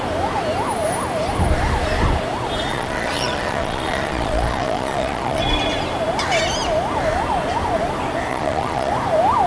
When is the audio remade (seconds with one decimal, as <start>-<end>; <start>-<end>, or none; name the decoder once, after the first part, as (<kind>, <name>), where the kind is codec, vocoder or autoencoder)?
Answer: 2.7-5.4 (vocoder, Vocos); 8.3-8.9